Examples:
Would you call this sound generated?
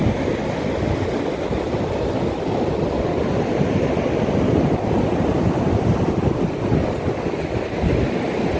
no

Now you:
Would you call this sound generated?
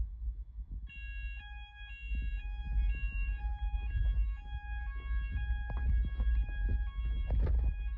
no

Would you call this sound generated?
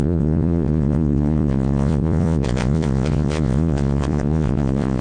yes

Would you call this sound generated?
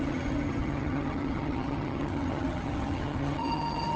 yes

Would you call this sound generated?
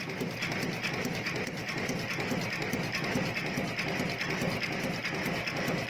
no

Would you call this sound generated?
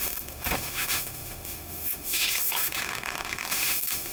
yes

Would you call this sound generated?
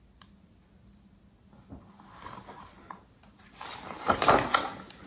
no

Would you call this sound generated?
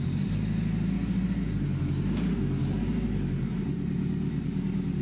no